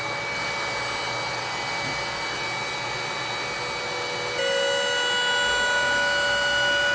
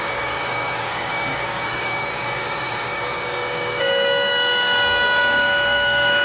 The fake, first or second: second